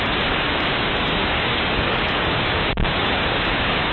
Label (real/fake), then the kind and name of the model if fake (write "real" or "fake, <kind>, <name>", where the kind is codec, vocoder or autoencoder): fake, codec, DAC